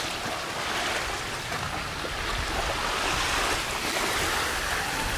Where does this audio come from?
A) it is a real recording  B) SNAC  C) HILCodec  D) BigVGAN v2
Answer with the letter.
A